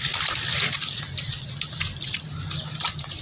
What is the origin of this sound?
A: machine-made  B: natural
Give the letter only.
B